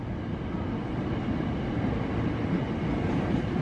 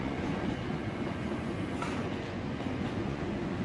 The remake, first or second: second